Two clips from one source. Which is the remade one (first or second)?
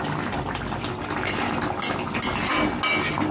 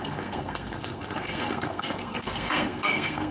second